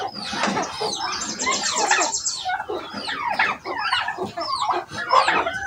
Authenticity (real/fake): real